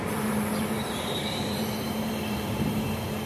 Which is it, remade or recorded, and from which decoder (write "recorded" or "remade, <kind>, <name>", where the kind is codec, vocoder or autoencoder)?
remade, vocoder, BigVGAN v2